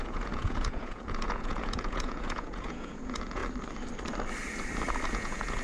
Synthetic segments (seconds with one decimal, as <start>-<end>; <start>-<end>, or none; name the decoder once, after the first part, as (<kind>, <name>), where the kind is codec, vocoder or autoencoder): 0.0-3.4 (vocoder, Vocos); 5.1-5.6